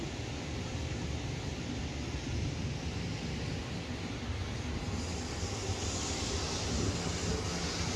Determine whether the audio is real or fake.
real